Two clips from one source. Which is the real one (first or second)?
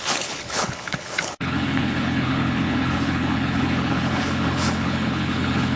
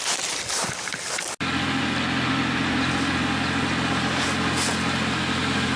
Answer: second